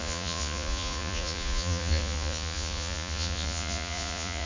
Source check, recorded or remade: remade